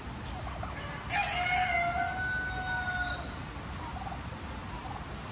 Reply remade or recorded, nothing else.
recorded